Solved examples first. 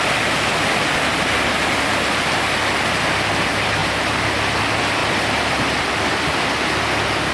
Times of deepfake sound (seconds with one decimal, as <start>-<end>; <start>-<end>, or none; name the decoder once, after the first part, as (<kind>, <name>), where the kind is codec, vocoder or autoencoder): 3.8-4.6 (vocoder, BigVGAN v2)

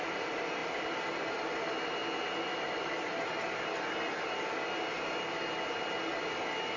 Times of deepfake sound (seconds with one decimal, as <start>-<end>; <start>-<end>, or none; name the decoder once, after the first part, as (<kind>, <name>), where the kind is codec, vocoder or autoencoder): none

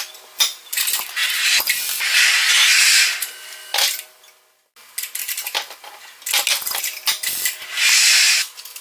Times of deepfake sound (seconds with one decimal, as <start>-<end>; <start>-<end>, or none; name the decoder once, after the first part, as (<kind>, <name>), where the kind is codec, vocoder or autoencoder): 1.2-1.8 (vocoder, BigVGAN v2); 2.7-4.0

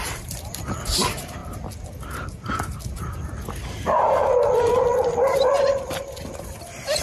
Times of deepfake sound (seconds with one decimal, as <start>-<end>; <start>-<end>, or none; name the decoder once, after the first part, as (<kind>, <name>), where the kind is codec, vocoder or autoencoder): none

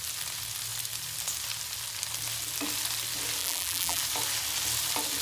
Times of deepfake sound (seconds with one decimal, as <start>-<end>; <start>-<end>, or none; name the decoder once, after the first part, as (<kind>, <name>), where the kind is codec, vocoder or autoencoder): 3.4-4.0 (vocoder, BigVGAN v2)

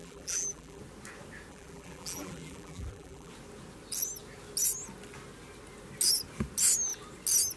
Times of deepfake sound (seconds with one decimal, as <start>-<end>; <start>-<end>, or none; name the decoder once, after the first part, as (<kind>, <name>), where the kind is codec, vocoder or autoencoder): 0.0-0.8 (vocoder, BigVGAN v2); 1.5-3.3

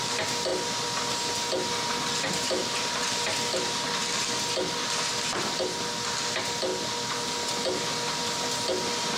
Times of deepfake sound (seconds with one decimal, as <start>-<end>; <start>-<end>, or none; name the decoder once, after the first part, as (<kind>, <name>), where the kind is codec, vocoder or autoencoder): 2.6-3.1 (vocoder, BigVGAN v2)

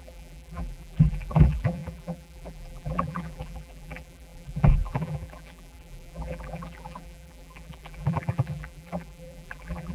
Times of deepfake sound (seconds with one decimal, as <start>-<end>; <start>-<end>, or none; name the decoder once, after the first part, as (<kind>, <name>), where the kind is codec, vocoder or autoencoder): 0.0-9.9 (vocoder, BigVGAN v2)